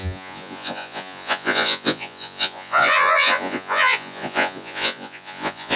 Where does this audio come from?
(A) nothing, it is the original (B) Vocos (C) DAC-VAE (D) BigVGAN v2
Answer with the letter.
B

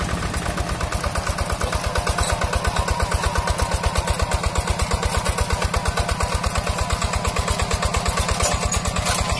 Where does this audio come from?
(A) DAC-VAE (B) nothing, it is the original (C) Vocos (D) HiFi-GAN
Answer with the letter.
B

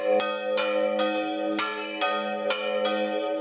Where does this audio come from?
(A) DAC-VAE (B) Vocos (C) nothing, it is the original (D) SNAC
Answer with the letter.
C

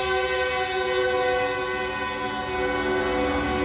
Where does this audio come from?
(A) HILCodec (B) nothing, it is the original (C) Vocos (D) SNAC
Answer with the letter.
B